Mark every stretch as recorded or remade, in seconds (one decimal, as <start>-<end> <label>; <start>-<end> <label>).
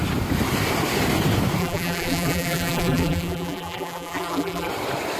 0.0-1.6 recorded; 1.6-4.7 remade; 4.7-5.2 recorded